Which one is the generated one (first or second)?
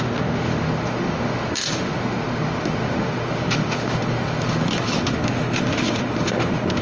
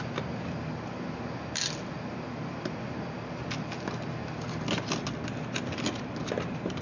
first